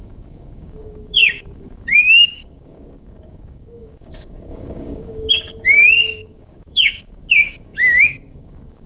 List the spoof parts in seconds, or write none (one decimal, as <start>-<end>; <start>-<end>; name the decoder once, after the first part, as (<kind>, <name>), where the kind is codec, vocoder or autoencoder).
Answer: 0.0-8.9 (codec, DAC)